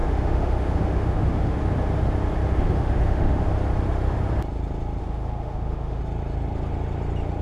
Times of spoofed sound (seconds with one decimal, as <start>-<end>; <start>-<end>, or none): 0.0-1.6; 2.6-3.4; 5.0-6.0